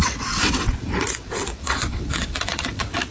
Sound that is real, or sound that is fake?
fake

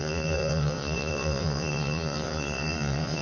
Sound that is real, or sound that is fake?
fake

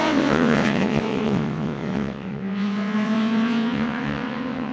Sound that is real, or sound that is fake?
fake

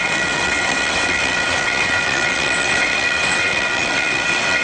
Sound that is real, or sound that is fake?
fake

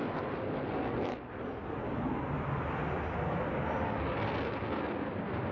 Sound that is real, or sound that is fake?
real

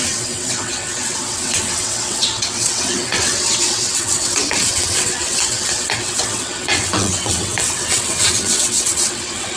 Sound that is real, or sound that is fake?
fake